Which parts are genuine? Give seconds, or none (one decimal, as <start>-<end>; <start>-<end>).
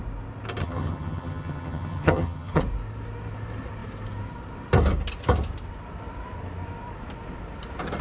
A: 0.0-0.6; 2.6-8.0